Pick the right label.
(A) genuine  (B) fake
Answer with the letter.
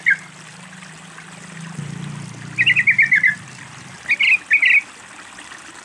A